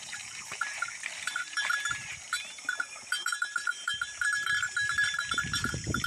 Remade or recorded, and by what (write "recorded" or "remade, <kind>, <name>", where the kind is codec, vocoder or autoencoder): remade, vocoder, BigVGAN v2